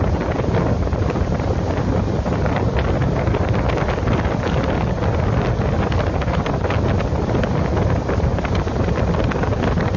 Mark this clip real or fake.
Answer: real